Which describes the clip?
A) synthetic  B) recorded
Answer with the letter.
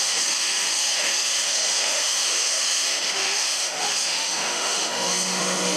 A